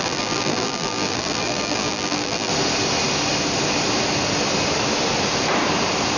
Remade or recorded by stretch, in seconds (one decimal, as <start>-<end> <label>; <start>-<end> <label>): 0.0-2.5 remade; 2.5-6.2 recorded